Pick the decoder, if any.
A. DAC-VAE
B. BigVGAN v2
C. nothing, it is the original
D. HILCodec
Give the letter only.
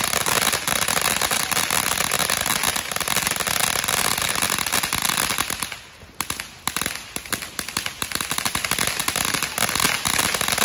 C